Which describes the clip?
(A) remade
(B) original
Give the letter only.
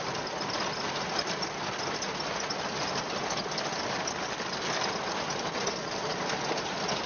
B